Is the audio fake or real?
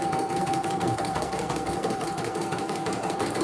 fake